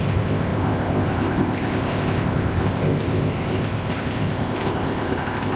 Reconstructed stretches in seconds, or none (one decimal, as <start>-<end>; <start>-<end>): 0.0-5.6